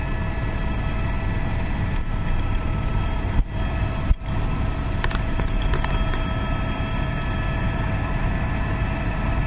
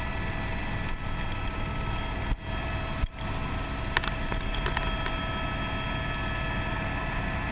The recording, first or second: second